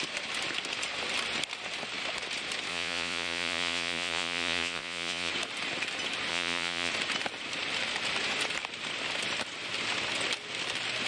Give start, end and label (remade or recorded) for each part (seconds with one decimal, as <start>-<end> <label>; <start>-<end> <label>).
0.0-2.7 recorded; 2.7-5.3 remade; 5.3-6.3 recorded; 6.3-6.9 remade; 6.9-11.1 recorded